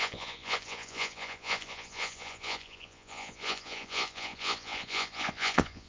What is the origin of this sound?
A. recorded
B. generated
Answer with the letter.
B